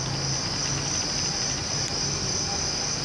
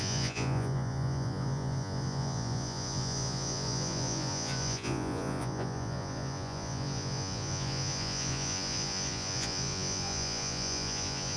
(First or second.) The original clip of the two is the first